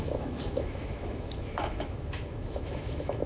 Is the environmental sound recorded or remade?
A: remade